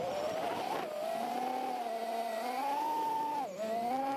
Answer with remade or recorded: recorded